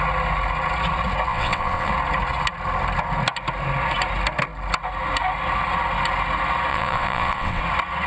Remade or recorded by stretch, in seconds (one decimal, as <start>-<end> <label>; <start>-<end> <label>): 0.0-1.3 recorded; 1.3-1.9 remade; 1.9-6.7 recorded; 6.7-7.6 remade; 7.6-8.1 recorded